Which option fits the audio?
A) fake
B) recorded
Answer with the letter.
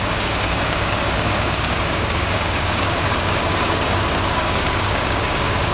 A